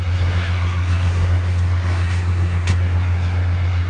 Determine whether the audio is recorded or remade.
remade